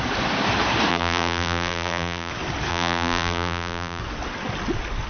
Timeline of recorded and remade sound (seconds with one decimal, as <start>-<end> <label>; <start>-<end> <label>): 0.0-0.9 recorded; 0.9-2.3 remade; 2.3-2.7 recorded; 2.7-4.0 remade; 4.0-5.1 recorded